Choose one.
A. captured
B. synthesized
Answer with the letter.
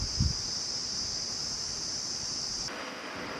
A